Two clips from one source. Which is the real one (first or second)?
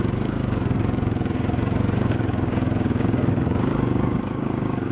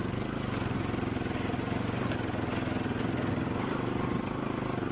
second